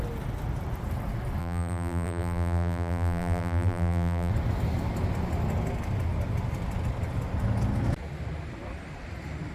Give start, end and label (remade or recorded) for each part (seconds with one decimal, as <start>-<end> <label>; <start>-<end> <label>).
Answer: 0.0-1.4 recorded; 1.4-4.3 remade; 4.3-9.5 recorded